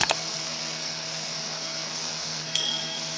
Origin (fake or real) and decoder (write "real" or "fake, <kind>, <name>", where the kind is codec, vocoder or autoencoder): fake, codec, SNAC